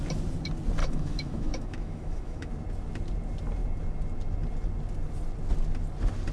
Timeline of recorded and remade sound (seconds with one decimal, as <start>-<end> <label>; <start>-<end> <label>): 0.0-0.8 recorded; 0.8-2.5 remade; 2.5-6.3 recorded